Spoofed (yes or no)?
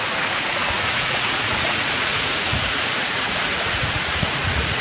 yes